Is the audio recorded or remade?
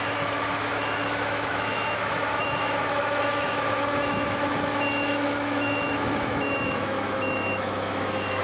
remade